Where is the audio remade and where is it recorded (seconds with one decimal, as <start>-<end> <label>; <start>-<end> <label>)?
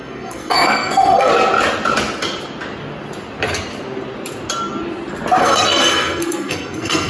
0.0-1.3 remade; 1.3-5.4 recorded; 5.4-7.1 remade